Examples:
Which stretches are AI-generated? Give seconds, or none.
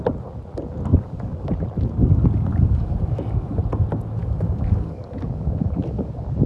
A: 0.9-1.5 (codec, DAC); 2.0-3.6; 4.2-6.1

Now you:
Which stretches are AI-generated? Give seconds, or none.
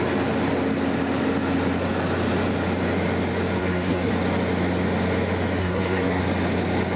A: 3.6-4.1 (codec, SNAC); 5.6-6.2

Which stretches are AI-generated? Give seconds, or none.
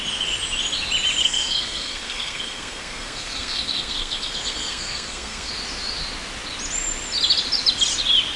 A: 1.2-5.5 (codec, SNAC)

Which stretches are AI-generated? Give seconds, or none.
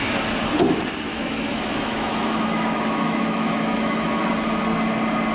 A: 1.1-4.3 (autoencoder, DAC-VAE)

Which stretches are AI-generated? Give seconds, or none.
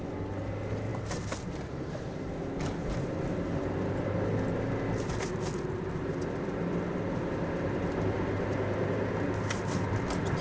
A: none